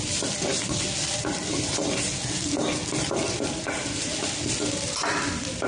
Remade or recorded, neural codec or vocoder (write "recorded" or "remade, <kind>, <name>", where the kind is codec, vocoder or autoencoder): recorded